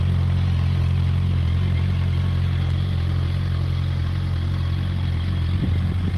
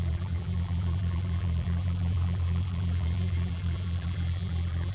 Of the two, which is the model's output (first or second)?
second